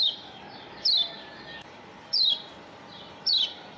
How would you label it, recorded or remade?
remade